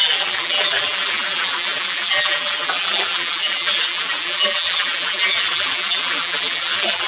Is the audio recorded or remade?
remade